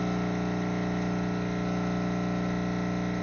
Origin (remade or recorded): recorded